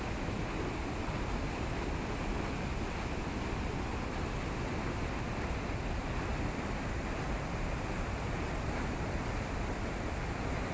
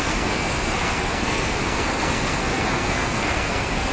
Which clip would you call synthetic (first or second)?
second